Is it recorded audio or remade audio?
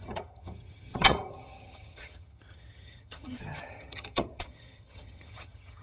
remade